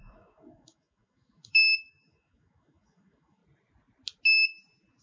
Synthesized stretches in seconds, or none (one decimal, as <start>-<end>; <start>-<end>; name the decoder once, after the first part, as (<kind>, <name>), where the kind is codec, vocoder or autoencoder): 0.0-3.4 (autoencoder, DAC-VAE)